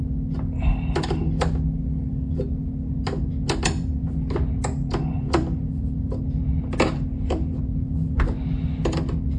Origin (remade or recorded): recorded